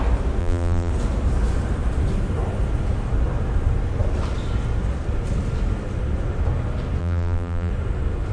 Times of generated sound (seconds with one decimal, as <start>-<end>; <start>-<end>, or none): 0.4-0.9; 7.0-7.7